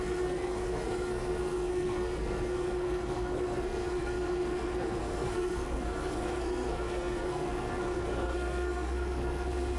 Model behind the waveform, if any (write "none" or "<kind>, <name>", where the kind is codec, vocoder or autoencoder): codec, SNAC